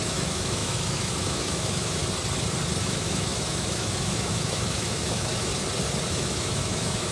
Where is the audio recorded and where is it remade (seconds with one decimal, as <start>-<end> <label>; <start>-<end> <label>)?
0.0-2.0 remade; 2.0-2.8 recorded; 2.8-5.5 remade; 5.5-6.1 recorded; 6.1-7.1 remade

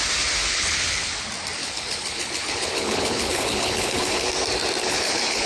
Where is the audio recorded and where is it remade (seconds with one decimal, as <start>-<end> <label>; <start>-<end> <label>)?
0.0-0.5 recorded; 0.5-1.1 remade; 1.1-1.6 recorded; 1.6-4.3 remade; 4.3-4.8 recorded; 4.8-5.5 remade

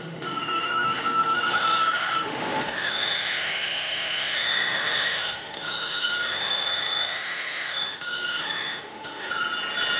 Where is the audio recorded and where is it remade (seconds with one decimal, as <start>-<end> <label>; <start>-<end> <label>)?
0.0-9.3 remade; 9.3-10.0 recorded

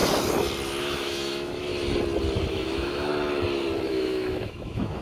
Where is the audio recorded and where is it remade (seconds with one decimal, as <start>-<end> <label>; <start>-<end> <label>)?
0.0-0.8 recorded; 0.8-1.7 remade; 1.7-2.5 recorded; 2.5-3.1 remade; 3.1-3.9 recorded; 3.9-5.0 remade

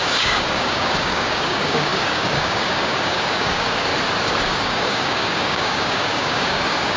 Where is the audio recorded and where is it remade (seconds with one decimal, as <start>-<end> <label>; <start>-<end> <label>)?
0.0-3.9 remade; 3.9-4.4 recorded; 4.4-7.0 remade

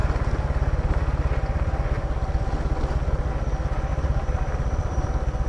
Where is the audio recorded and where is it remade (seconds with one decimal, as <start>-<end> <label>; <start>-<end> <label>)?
0.0-3.9 recorded; 3.9-5.1 remade; 5.1-5.5 recorded

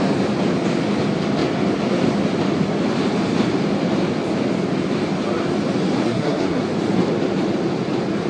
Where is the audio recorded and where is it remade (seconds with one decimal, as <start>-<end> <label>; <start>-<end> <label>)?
0.0-6.0 recorded; 6.0-6.6 remade; 6.6-8.3 recorded

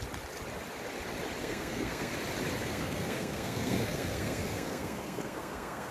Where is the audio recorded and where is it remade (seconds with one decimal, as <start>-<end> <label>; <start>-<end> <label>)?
0.0-1.4 recorded; 1.4-2.1 remade; 2.1-2.6 recorded; 2.6-5.9 remade